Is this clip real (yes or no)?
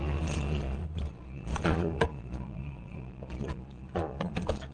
no